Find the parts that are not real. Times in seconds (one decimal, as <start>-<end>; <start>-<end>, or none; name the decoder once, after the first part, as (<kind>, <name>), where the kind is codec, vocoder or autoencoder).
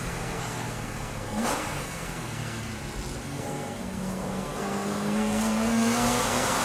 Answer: 0.0-2.7 (codec, SNAC); 3.2-6.6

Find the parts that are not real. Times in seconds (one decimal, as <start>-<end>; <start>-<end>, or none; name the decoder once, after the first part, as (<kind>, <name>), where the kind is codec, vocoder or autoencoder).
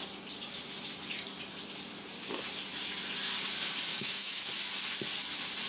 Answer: 3.9-4.5 (autoencoder, DAC-VAE)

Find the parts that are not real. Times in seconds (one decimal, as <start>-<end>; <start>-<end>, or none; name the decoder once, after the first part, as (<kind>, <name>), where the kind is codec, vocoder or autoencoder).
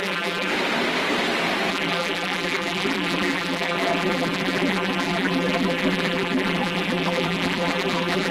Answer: 0.0-0.5 (vocoder, BigVGAN v2); 1.7-8.3